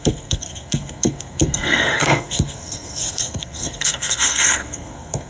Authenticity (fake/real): fake